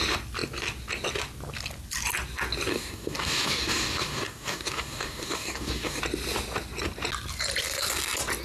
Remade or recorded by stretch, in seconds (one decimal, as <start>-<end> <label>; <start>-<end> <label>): 0.0-2.7 recorded; 2.7-6.0 remade; 6.0-8.4 recorded